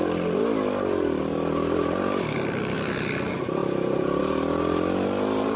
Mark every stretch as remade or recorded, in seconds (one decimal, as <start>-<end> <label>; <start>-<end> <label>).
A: 0.0-5.6 recorded